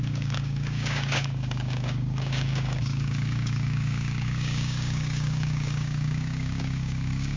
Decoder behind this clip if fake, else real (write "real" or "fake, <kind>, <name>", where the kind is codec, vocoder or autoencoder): fake, codec, DAC